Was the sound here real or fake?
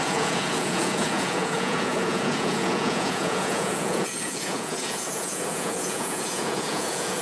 fake